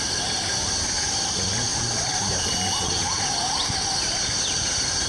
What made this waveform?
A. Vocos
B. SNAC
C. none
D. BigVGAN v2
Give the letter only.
D